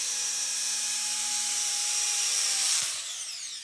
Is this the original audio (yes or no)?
no